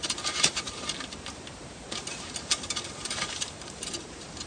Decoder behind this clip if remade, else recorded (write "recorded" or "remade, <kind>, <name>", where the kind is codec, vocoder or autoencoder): remade, vocoder, BigVGAN v2